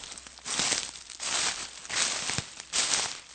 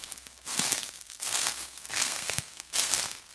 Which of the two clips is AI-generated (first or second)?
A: second